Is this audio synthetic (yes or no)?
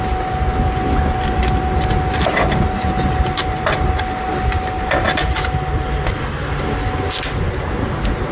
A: no